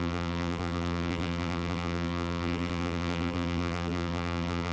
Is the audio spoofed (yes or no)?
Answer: yes